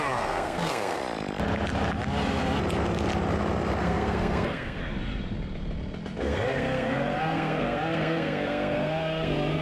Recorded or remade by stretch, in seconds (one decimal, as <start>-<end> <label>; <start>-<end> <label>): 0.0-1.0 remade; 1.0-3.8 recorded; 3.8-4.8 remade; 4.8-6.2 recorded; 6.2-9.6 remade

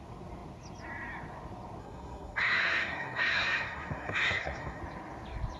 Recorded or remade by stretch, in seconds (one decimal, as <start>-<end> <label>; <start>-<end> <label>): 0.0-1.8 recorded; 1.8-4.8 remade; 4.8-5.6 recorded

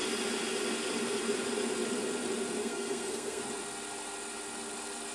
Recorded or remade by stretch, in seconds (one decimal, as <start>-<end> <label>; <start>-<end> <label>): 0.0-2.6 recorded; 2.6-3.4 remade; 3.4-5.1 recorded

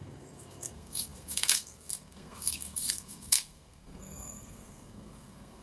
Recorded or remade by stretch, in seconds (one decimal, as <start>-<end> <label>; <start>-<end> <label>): 0.0-5.6 remade

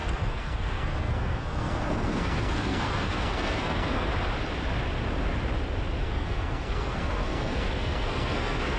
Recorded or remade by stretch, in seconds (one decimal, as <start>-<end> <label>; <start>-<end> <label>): 0.0-4.1 remade; 4.1-6.0 recorded; 6.0-8.8 remade

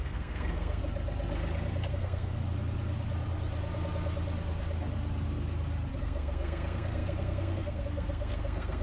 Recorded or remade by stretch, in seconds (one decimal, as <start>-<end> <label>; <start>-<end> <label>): 0.0-0.8 remade; 0.8-1.9 recorded; 1.9-2.4 remade; 2.4-6.0 recorded; 6.0-8.8 remade

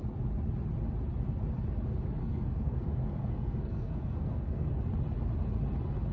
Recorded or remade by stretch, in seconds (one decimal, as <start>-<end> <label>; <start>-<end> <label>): 0.0-2.2 recorded; 2.2-4.8 remade; 4.8-6.1 recorded

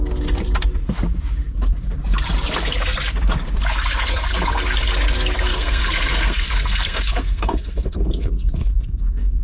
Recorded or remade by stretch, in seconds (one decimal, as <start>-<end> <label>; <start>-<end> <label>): 0.0-5.5 recorded; 5.5-9.4 remade